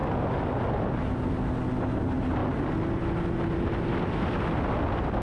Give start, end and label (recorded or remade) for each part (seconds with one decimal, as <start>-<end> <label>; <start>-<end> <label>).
0.0-5.2 recorded